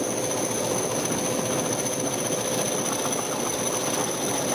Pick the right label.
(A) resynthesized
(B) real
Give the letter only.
B